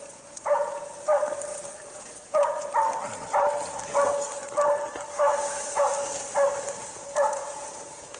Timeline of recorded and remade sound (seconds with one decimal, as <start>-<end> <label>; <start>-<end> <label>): 0.0-0.9 remade; 0.9-1.5 recorded; 1.5-2.7 remade; 2.7-6.8 recorded; 6.8-8.2 remade